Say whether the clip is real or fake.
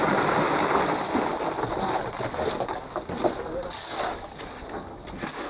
real